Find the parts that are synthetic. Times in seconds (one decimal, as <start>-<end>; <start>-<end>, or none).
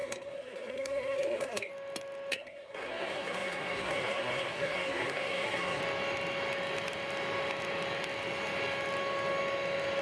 0.0-1.7; 2.3-5.8